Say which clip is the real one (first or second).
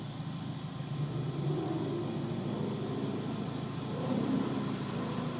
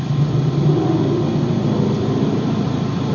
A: first